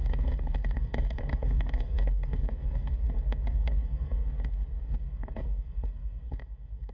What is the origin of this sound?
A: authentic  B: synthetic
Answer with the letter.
B